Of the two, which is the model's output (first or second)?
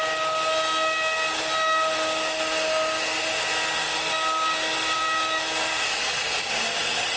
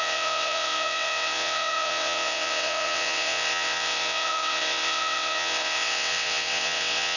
second